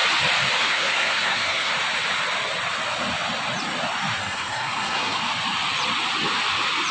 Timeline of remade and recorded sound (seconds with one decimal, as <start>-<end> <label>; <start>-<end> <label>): 0.0-0.6 recorded; 0.6-1.7 remade; 1.7-4.2 recorded; 4.2-5.2 remade; 5.2-6.9 recorded